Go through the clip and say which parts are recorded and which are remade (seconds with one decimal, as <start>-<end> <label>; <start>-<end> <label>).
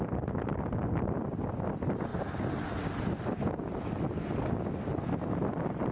0.0-5.9 recorded